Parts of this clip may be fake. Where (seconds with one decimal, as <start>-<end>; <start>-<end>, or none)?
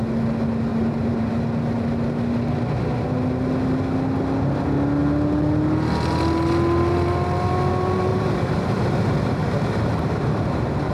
0.7-1.3; 8.1-10.9